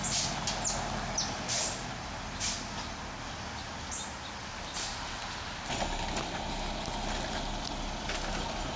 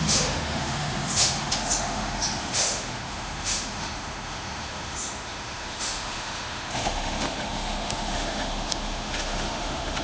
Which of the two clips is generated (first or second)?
second